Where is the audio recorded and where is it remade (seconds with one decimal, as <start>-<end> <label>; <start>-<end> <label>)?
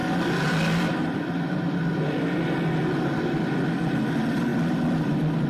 0.0-5.5 recorded